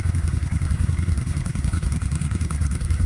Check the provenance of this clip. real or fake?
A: fake